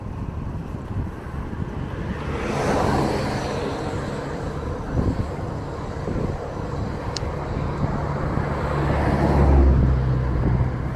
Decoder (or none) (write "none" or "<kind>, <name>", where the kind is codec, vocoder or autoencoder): none